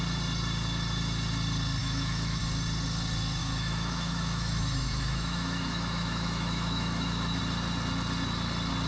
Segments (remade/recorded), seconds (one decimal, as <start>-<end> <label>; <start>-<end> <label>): 0.0-1.8 recorded; 1.8-2.4 remade; 2.4-3.4 recorded; 3.4-7.4 remade; 7.4-8.9 recorded